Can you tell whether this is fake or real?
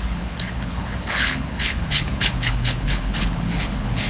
fake